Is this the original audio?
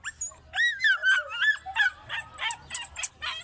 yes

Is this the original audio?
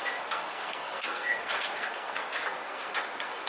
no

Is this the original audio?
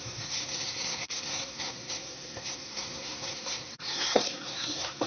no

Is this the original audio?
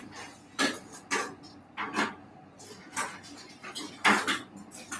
yes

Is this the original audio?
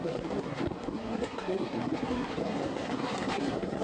no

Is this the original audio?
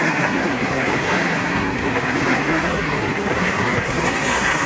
no